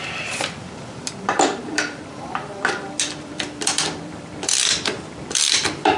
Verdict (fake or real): fake